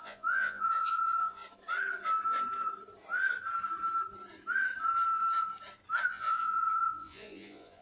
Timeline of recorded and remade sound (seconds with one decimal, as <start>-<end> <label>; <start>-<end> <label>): 0.0-1.4 remade; 1.4-6.1 recorded; 6.1-7.8 remade